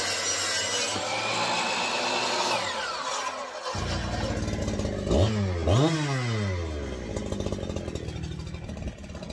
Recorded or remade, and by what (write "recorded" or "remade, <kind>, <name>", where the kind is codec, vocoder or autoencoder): recorded